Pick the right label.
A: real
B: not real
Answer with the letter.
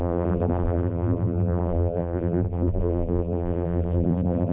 B